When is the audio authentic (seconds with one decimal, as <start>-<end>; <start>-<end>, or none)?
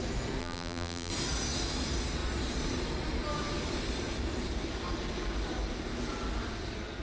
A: 0.0-0.4; 1.1-7.0